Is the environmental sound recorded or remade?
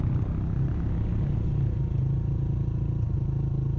recorded